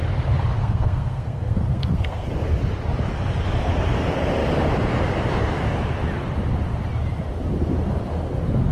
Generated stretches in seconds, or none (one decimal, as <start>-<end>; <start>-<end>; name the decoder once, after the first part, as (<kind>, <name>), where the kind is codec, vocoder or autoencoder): 0.6-2.3 (codec, SNAC)